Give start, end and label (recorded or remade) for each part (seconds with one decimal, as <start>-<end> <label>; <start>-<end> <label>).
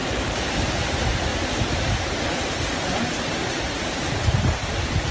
0.0-0.5 remade; 0.5-5.1 recorded